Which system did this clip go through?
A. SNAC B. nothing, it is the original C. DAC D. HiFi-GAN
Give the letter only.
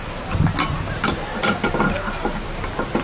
B